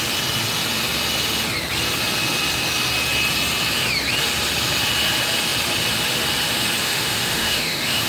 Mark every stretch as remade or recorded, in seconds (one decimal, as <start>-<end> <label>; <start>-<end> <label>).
0.0-6.8 recorded; 6.8-8.1 remade